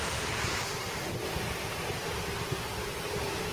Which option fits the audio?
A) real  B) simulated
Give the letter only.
A